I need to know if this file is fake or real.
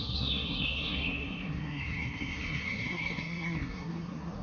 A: fake